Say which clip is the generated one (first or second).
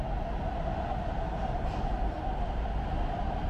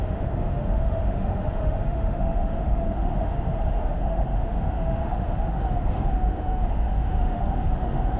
second